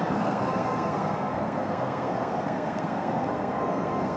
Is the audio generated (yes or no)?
yes